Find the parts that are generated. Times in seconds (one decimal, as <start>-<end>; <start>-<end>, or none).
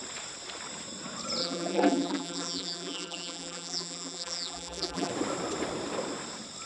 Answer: 1.4-5.1